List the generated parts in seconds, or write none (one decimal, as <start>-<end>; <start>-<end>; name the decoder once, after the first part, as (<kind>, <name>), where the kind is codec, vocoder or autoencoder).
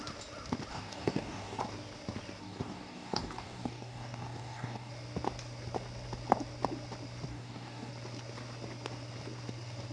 0.7-1.6 (codec, DAC); 2.4-4.9; 7.3-7.9